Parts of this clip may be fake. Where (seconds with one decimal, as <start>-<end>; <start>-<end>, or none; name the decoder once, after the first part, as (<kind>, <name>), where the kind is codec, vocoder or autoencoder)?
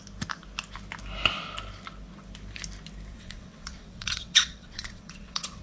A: 3.1-5.6 (vocoder, WaveNeXt)